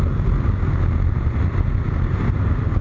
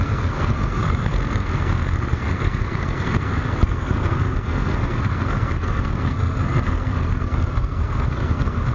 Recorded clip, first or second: first